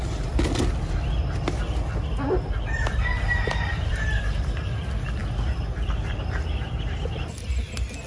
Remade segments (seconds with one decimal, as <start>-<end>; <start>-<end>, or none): 3.7-4.2